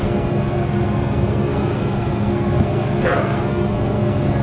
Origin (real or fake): fake